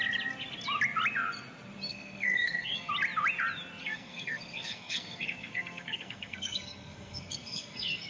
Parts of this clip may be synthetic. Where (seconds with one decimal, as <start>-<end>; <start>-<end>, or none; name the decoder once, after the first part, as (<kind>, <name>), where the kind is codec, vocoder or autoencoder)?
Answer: 1.9-2.9 (codec, SNAC); 3.8-8.1